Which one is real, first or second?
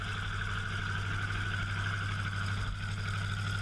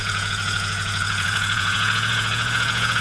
first